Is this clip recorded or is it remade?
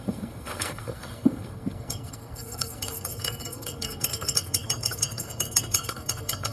remade